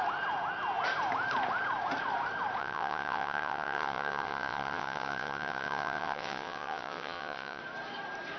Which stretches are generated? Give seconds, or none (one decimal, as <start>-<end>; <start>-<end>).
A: 2.6-7.6